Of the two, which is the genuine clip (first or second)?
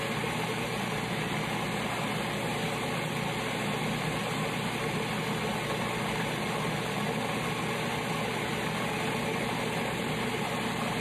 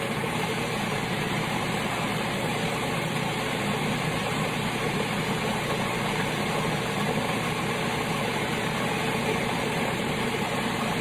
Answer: first